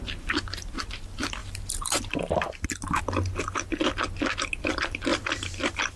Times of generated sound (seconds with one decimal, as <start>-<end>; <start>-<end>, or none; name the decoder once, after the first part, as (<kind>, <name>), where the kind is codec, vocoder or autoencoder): 1.4-3.0 (vocoder, BigVGAN v2); 5.1-6.0